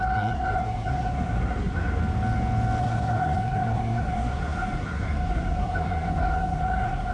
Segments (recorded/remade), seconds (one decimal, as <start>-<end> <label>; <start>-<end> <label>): 0.0-2.0 remade; 2.0-2.8 recorded; 2.8-7.1 remade